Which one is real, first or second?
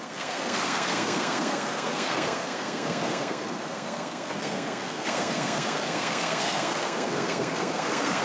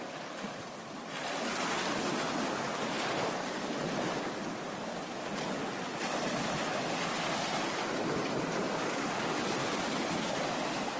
second